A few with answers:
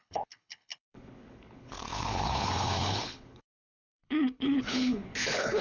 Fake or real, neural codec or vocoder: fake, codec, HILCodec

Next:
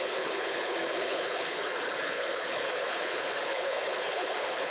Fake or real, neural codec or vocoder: fake, codec, HILCodec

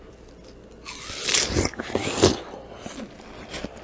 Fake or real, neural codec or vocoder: real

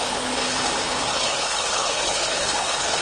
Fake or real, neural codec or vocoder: fake, codec, HILCodec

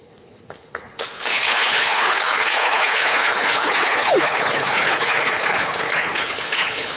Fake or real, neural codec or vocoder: fake, codec, HILCodec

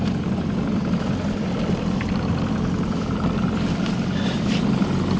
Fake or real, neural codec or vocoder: real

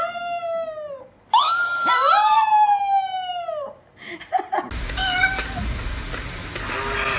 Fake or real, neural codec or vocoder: real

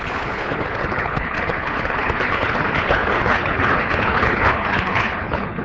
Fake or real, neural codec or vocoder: fake, codec, HILCodec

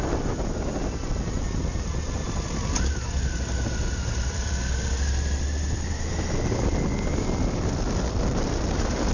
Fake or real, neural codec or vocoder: real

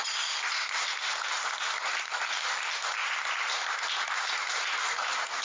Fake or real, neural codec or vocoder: real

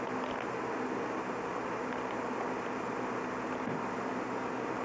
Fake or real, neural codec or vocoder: real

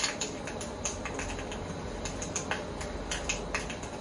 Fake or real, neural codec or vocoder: real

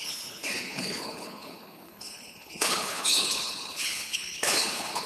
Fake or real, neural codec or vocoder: fake, codec, HILCodec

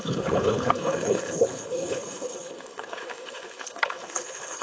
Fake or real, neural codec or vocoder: fake, codec, HILCodec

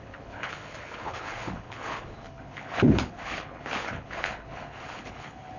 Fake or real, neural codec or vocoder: fake, codec, HILCodec